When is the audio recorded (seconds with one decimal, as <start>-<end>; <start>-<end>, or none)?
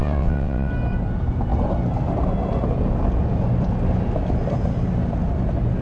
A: 0.7-5.8